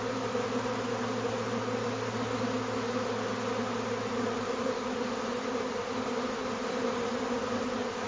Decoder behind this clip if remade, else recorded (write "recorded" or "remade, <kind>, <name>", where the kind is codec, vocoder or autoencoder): recorded